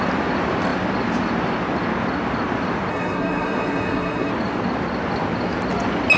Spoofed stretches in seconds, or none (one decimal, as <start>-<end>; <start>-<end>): 2.9-4.3